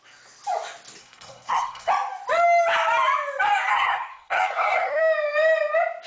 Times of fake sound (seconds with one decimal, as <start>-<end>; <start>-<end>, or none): 1.0-1.9; 3.7-5.0